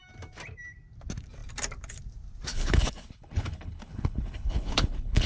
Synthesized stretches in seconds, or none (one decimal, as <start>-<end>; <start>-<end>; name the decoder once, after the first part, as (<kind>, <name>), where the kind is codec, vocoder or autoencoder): 2.5-5.3 (codec, HILCodec)